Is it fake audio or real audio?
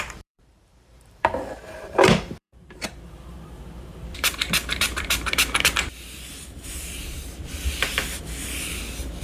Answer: fake